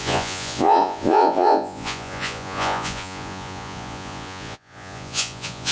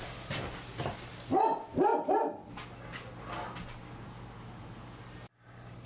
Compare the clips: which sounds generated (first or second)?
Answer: first